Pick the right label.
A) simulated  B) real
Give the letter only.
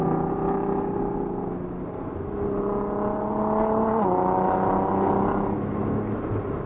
B